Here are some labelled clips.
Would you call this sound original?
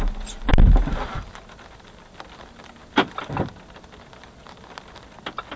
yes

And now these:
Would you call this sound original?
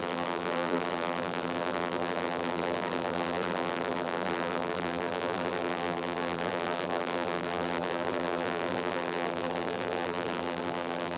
no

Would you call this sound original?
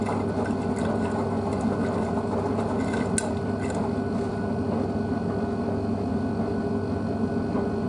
yes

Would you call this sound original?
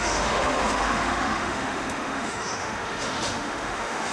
no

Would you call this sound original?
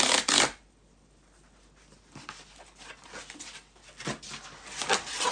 yes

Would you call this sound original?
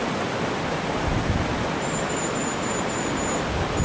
yes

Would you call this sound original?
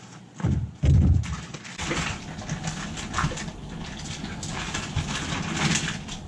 yes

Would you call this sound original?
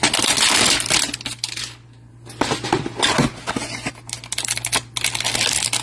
yes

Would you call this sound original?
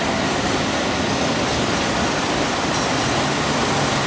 no